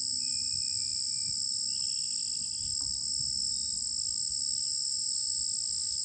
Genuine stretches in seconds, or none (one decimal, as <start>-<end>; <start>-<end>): 0.0-6.0